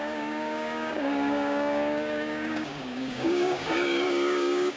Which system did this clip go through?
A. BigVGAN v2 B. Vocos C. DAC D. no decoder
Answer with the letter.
C